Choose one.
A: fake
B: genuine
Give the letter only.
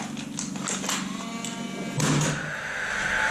B